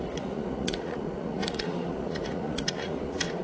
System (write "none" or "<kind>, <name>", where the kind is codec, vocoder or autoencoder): vocoder, Vocos